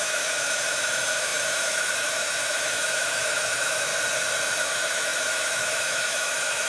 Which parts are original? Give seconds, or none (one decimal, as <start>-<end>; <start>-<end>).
3.9-4.6